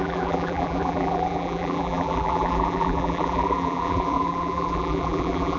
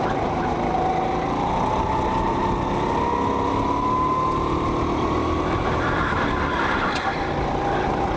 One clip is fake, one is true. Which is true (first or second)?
second